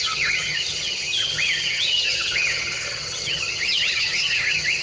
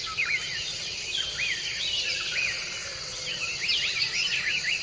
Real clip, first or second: second